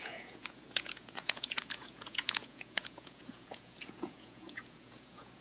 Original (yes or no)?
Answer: no